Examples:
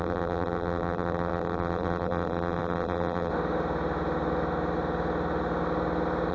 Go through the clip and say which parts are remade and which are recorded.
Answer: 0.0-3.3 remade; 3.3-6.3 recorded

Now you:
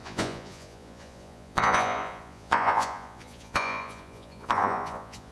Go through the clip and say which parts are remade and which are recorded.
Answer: 0.0-5.3 remade